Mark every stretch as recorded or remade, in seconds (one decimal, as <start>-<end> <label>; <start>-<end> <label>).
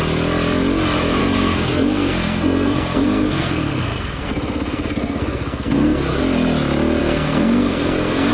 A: 0.0-1.2 recorded; 1.2-6.2 remade; 6.2-7.0 recorded; 7.0-8.3 remade